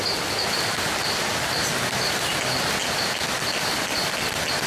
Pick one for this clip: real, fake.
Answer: real